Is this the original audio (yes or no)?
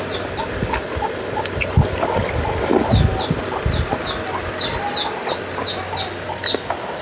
yes